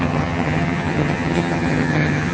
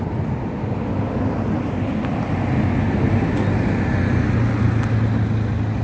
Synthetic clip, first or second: first